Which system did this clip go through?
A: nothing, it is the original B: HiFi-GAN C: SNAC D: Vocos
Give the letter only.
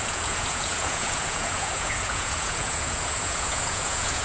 D